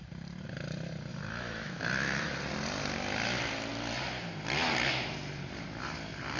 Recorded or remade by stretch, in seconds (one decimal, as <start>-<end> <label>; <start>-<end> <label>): 0.0-1.1 recorded; 1.1-2.4 remade; 2.4-6.4 recorded

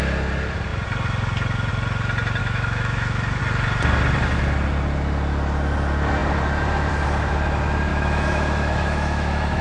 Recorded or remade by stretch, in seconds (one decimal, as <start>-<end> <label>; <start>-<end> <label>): 0.0-2.4 recorded; 2.4-3.4 remade; 3.4-7.9 recorded; 7.9-9.6 remade

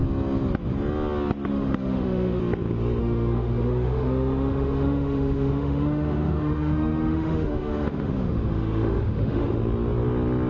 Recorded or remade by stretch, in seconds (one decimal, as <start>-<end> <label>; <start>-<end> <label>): 0.0-1.5 recorded; 1.5-2.4 remade; 2.4-3.0 recorded; 3.0-9.6 remade; 9.6-10.5 recorded